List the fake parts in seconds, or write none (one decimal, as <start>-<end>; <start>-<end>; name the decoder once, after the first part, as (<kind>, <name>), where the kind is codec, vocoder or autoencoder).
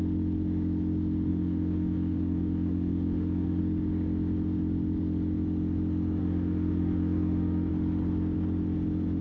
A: 1.3-3.6 (autoencoder, DAC-VAE); 6.2-7.7